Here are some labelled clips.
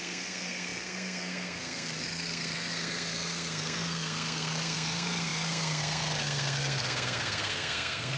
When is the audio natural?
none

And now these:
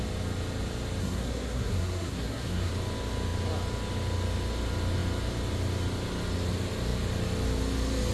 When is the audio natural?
0.0-1.0; 2.7-8.1

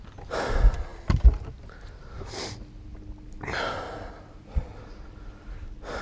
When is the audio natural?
0.0-6.0

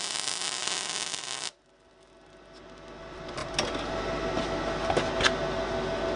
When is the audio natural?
0.0-6.2